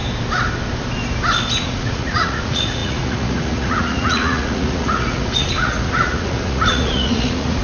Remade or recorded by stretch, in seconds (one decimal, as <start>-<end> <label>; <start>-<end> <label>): 0.0-1.6 recorded; 1.6-7.6 remade